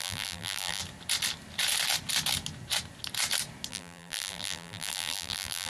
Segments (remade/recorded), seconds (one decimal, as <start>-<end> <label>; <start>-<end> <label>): 0.0-0.8 remade; 0.8-3.7 recorded; 3.7-5.7 remade